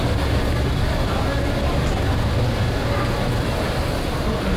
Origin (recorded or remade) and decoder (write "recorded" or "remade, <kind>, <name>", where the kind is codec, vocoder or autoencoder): recorded